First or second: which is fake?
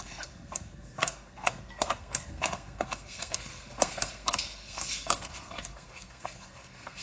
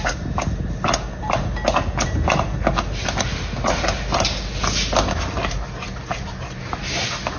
first